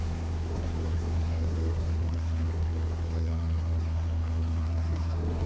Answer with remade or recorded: remade